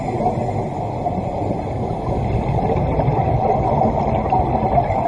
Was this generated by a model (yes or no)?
no